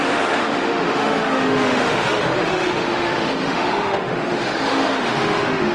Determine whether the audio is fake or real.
fake